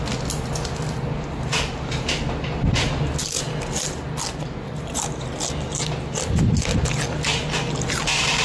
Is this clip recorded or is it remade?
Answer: recorded